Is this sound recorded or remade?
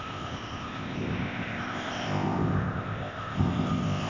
remade